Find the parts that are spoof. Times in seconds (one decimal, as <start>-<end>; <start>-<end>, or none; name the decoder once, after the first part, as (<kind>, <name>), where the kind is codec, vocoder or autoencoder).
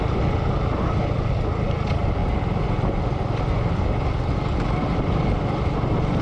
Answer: 0.0-2.2 (vocoder, BigVGAN v2); 4.5-6.2